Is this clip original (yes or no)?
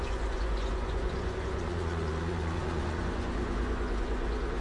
no